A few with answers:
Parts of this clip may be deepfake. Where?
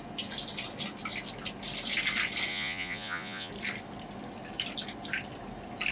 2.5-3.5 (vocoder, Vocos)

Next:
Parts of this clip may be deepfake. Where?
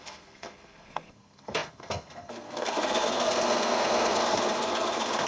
0.0-5.3 (codec, SNAC)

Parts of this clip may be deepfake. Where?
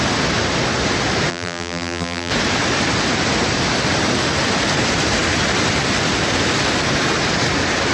1.3-2.3 (vocoder, BigVGAN v2)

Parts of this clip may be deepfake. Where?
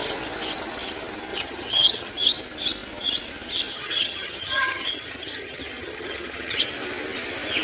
1.3-2.1 (vocoder, HiFi-GAN); 3.7-6.6